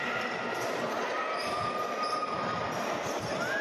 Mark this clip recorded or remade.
recorded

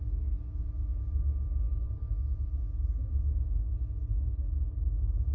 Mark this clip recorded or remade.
recorded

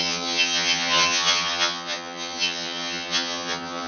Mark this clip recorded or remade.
remade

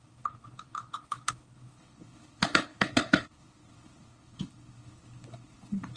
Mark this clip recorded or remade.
remade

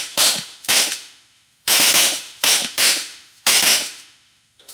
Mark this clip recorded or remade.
remade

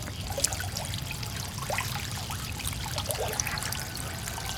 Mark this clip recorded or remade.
recorded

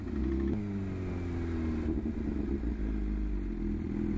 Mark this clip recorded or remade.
recorded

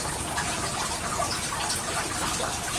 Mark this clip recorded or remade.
recorded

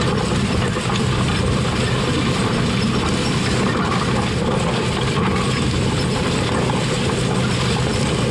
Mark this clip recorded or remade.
recorded